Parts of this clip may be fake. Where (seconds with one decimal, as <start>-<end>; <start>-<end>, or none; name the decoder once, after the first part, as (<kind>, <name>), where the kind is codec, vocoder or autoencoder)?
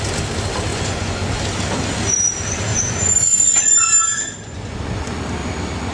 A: 0.7-1.4 (vocoder, Vocos); 2.7-3.9; 4.4-5.2